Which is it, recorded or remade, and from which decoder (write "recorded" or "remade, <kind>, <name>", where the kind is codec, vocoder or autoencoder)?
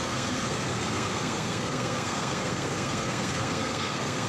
remade, codec, SNAC